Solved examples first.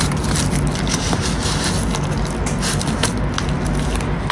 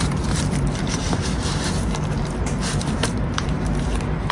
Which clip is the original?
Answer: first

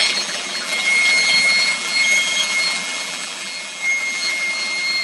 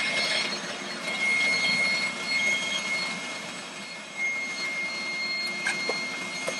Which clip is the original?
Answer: second